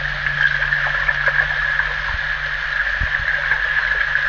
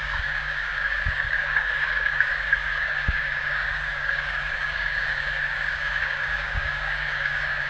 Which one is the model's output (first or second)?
second